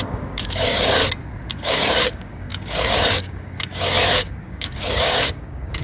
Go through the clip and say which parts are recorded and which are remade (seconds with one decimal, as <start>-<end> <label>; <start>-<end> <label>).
0.0-1.0 remade; 1.0-1.7 recorded; 1.7-5.8 remade